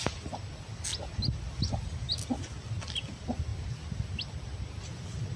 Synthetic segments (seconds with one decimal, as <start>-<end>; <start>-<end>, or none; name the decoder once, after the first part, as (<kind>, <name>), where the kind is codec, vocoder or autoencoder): none